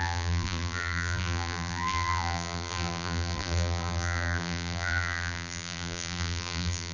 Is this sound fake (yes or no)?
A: yes